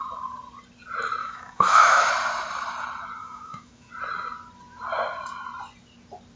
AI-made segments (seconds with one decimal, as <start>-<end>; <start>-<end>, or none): 1.2-2.1; 3.2-3.9